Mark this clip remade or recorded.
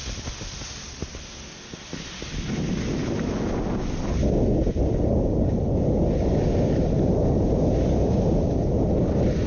recorded